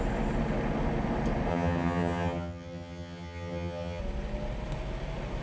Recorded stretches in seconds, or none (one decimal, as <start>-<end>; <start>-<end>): 0.0-1.5; 4.0-5.4